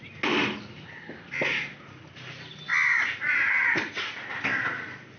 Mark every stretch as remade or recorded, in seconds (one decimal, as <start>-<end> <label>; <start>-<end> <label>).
0.0-5.2 recorded